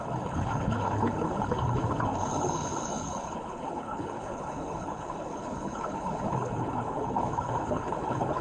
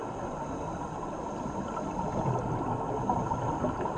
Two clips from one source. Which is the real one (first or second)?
second